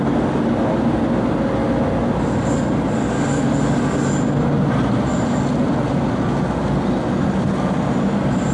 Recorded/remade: recorded